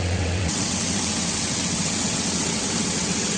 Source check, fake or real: fake